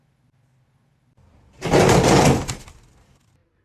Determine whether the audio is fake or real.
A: real